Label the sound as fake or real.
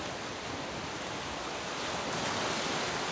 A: real